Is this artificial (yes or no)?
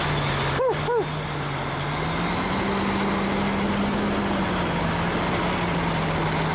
no